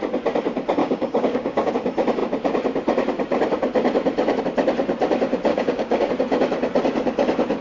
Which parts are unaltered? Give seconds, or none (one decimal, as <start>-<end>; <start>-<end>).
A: 0.0-0.8; 1.7-5.5; 6.1-7.6